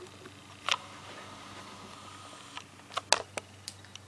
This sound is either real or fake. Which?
real